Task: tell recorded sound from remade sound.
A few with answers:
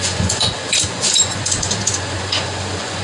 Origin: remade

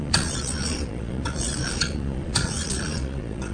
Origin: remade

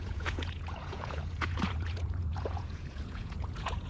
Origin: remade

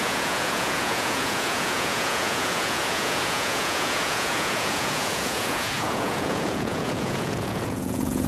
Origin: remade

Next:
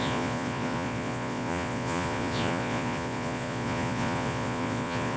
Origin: remade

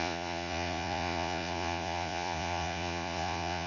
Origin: remade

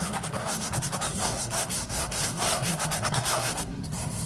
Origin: remade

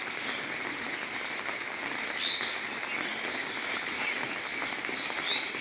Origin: recorded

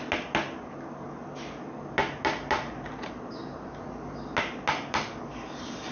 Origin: recorded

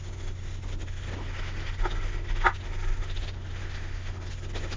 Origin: recorded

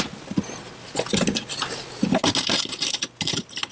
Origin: recorded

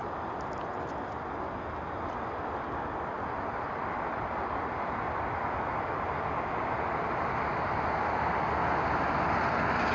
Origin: recorded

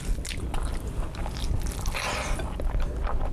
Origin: recorded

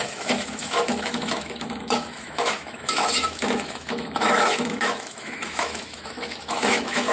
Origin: remade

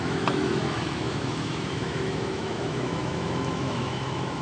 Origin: remade